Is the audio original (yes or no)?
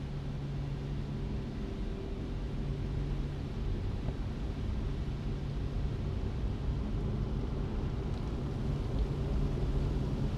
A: yes